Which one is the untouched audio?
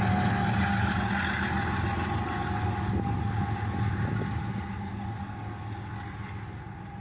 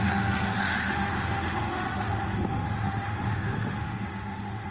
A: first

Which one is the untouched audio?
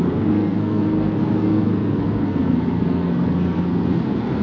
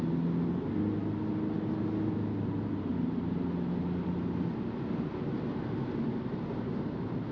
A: second